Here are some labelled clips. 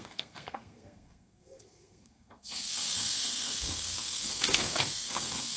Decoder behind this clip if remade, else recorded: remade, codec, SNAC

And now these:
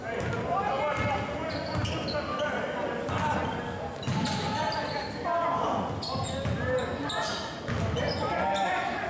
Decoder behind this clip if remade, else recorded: recorded